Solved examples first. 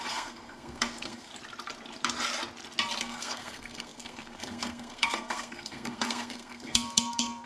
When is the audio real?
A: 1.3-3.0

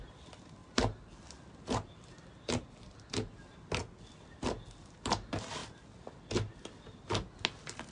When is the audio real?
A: 0.0-7.9

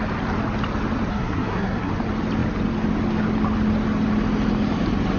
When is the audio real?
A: 0.0-1.1; 1.9-5.2

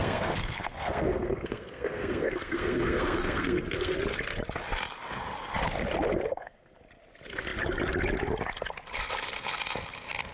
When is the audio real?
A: 3.9-6.3; 6.8-10.3

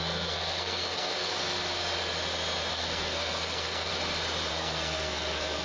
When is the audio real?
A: 1.3-2.7; 3.9-4.5

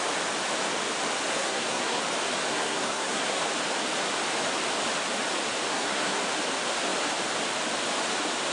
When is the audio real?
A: 0.0-1.3; 2.0-2.5; 3.4-5.7; 6.2-8.5

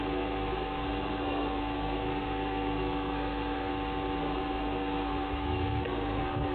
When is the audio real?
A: 3.7-4.2

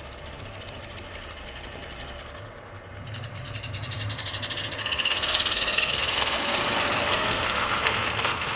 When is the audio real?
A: 0.0-4.8; 6.6-7.1